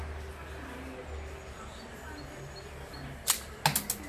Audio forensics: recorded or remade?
recorded